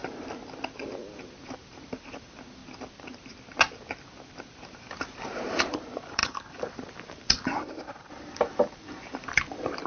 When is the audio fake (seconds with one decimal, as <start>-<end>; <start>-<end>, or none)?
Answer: 1.0-2.6; 4.4-9.9